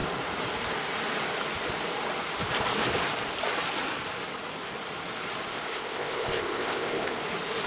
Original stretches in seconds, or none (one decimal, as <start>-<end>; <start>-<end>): 0.0-5.5; 7.2-7.7